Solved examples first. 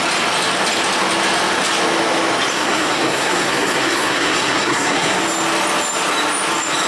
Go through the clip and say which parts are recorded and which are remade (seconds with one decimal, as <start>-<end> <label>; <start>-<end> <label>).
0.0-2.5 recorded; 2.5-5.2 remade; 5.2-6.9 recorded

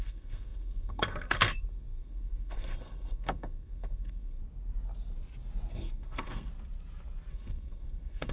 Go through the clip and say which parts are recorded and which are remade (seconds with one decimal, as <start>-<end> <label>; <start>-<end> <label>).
0.0-4.4 remade; 4.4-5.7 recorded; 5.7-6.5 remade; 6.5-7.3 recorded; 7.3-8.3 remade

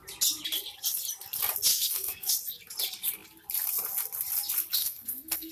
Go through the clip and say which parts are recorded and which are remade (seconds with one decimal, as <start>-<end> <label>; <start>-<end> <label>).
0.0-1.7 recorded; 1.7-2.3 remade; 2.3-4.8 recorded; 4.8-5.5 remade

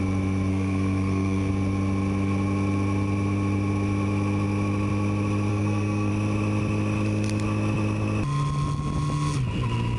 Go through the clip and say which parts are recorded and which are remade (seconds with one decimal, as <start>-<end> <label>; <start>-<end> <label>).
0.0-0.5 recorded; 0.5-1.5 remade; 1.5-5.5 recorded; 5.5-6.1 remade; 6.1-10.0 recorded

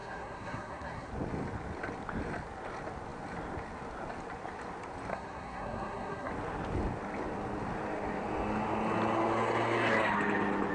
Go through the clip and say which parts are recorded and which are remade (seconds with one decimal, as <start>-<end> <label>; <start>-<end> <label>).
0.0-1.1 remade; 1.1-5.1 recorded; 5.1-6.3 remade; 6.3-10.7 recorded

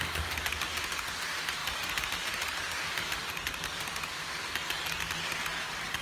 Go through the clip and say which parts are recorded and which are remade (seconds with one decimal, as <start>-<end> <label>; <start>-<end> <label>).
0.0-6.0 recorded